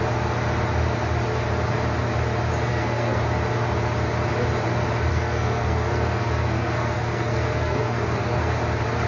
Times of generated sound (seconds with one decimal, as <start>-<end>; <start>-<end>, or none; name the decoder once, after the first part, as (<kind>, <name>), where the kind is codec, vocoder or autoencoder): 2.7-3.2 (codec, SNAC); 5.1-8.6